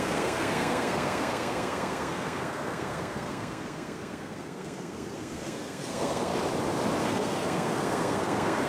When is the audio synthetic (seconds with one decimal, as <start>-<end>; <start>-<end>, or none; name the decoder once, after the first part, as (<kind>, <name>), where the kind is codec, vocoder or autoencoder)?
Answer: 0.0-6.3 (codec, SNAC); 7.0-8.7